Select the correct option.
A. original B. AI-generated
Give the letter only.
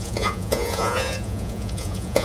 B